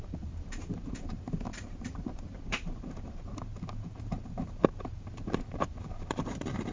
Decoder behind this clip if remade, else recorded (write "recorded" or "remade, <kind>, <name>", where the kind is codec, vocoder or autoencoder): remade, vocoder, BigVGAN v2